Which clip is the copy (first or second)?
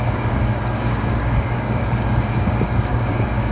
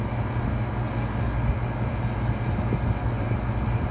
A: first